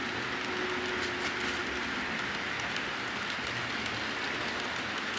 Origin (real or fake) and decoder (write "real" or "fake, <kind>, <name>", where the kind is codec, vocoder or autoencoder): real